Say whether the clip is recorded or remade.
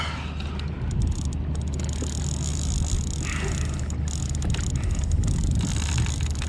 recorded